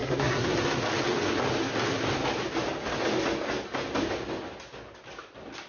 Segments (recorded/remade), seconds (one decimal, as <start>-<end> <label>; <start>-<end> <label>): 0.0-0.8 remade; 0.8-5.7 recorded